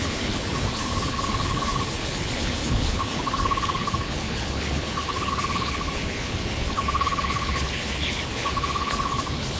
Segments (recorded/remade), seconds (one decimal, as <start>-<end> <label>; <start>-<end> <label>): 0.0-9.6 remade